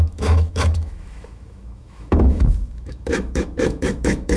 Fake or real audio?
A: fake